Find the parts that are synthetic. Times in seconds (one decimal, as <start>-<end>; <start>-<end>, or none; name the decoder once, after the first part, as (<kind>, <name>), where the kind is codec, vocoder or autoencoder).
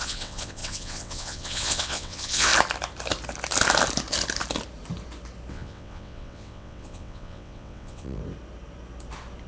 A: 0.0-2.5 (vocoder, WaveNeXt); 5.5-8.2